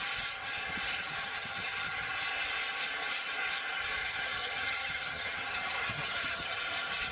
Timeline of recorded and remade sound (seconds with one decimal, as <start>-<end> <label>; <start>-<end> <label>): 0.0-1.2 recorded; 1.2-2.1 remade; 2.1-4.0 recorded; 4.0-6.6 remade; 6.6-7.1 recorded